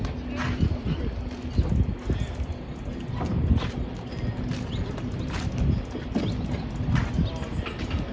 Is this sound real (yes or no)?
yes